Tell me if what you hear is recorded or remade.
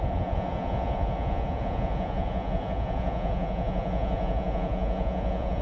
remade